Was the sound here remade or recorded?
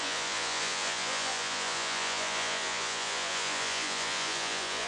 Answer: remade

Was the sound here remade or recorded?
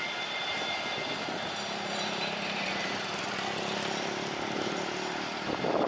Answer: remade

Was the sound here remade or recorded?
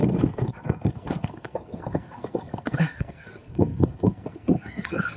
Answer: remade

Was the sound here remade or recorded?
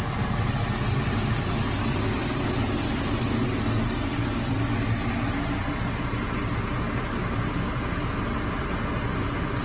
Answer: recorded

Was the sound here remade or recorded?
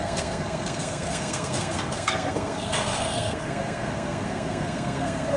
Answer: remade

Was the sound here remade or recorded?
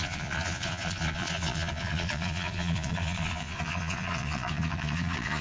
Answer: remade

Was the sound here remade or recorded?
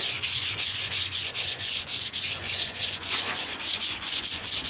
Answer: remade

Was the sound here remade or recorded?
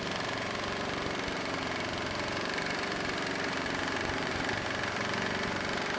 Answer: remade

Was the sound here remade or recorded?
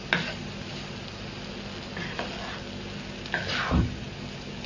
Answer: recorded